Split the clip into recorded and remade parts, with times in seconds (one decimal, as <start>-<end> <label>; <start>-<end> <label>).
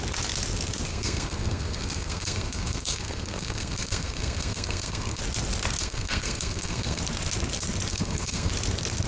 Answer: 0.0-0.9 recorded; 0.9-5.2 remade; 5.2-5.8 recorded; 5.8-7.0 remade; 7.0-7.9 recorded; 7.9-8.5 remade; 8.5-9.1 recorded